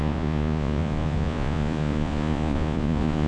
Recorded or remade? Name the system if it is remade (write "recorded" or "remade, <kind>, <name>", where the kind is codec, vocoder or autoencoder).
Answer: remade, vocoder, Vocos